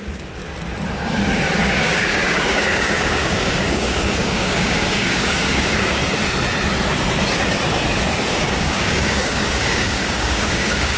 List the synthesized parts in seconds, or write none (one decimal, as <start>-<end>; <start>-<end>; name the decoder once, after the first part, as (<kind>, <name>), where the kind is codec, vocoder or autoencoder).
0.0-0.4 (codec, DAC); 1.6-6.0; 8.3-11.0